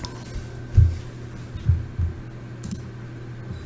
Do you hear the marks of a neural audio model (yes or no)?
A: no